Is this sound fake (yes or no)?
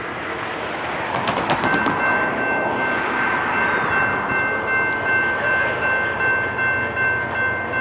no